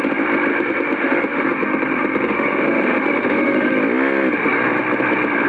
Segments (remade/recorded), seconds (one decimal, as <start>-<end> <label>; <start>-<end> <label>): 0.0-0.5 recorded; 0.5-3.8 remade; 3.8-5.5 recorded

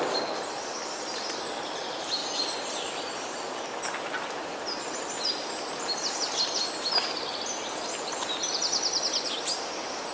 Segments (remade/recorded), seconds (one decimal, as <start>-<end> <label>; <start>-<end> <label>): 0.0-10.1 recorded

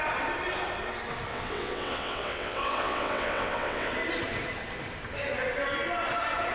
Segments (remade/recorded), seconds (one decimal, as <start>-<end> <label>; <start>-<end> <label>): 0.0-1.3 recorded; 1.3-3.9 remade; 3.9-6.5 recorded

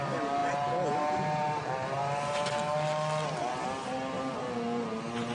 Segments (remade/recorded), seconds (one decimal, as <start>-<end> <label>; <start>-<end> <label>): 0.0-5.3 recorded